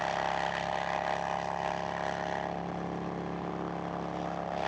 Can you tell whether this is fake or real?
real